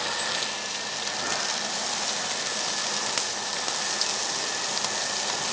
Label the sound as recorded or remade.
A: recorded